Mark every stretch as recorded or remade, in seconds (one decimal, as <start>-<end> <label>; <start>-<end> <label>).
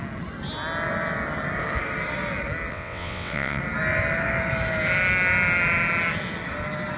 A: 0.0-2.7 recorded; 2.7-3.6 remade; 3.6-7.0 recorded